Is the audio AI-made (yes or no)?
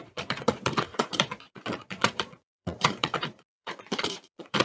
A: yes